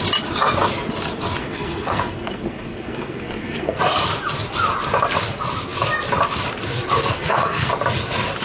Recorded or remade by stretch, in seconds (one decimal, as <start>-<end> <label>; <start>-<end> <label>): 0.0-1.4 recorded; 1.4-3.8 remade; 3.8-7.0 recorded; 7.0-7.7 remade; 7.7-8.4 recorded